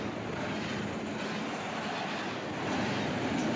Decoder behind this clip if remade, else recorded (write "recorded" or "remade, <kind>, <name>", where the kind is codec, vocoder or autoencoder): recorded